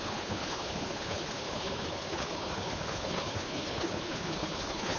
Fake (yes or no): yes